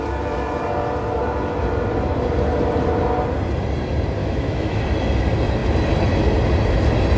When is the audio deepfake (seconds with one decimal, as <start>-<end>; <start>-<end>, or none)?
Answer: 4.2-4.8